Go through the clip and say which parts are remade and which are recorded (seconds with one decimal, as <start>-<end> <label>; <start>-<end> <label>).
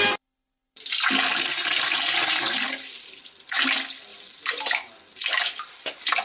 0.0-1.6 recorded; 1.6-2.4 remade; 2.4-4.1 recorded; 4.1-4.7 remade; 4.7-6.2 recorded